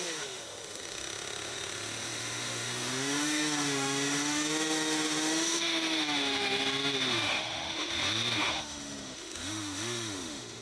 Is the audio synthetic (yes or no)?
yes